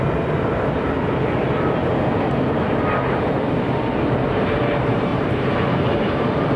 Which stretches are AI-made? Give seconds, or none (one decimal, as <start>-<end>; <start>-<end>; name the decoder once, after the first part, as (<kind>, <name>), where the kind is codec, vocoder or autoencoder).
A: 5.1-6.6 (vocoder, BigVGAN v2)